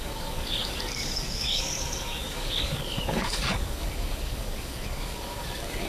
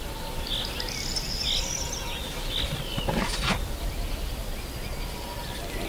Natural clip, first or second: second